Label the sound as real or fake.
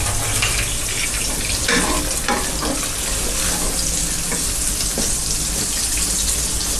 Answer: real